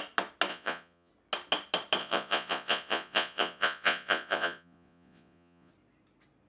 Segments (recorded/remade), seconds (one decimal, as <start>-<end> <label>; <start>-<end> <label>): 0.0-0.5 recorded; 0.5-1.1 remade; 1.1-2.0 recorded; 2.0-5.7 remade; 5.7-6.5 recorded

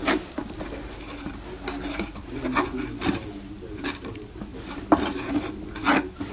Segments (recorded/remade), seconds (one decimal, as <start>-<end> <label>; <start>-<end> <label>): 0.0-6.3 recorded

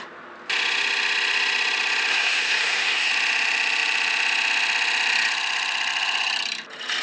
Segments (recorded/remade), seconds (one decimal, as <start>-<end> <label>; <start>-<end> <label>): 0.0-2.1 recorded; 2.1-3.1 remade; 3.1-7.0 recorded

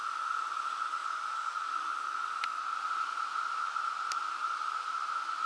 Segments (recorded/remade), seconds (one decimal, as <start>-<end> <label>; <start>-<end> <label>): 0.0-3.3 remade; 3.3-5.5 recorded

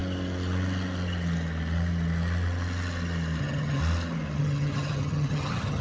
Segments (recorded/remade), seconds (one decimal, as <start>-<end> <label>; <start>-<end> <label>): 0.0-3.4 recorded; 3.4-3.8 remade; 3.8-4.4 recorded; 4.4-5.8 remade

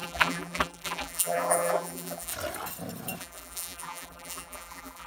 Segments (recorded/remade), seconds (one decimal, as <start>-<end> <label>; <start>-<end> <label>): 0.0-2.3 remade; 2.3-3.2 recorded; 3.2-5.1 remade